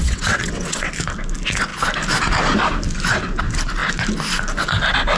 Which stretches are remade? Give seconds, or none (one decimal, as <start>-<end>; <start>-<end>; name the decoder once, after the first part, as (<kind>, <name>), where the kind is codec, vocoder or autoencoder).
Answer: 0.0-0.9 (vocoder, WaveNeXt)